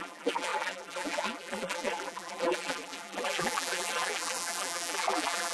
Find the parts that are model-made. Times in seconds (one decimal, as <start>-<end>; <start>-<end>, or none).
0.0-5.5

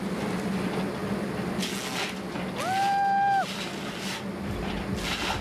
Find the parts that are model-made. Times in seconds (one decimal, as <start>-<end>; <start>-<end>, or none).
none

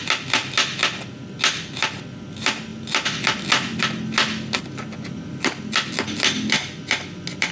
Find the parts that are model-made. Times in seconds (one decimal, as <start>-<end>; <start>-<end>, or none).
none

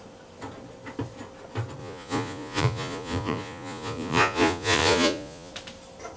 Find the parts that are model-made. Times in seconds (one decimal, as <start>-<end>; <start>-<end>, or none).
1.8-5.5

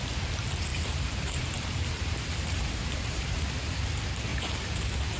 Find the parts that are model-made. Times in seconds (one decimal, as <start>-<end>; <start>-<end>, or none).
0.7-3.8; 4.3-5.2

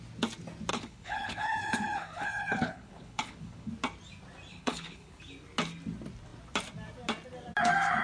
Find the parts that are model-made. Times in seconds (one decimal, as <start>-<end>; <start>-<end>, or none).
0.7-3.7; 4.5-5.2

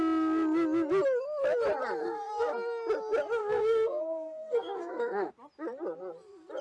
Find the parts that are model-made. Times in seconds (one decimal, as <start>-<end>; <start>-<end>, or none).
2.0-2.5; 3.4-5.3